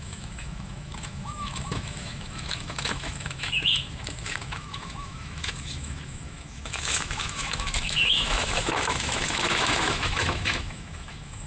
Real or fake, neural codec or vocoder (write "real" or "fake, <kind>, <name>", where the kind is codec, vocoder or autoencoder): fake, autoencoder, DAC-VAE